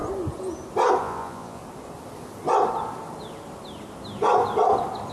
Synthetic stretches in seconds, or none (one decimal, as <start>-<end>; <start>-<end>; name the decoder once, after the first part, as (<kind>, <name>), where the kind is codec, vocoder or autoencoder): 1.0-1.6 (vocoder, Vocos)